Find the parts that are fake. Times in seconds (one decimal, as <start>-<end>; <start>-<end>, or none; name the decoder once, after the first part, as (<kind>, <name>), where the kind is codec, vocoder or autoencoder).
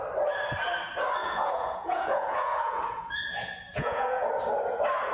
1.2-4.3 (vocoder, Vocos)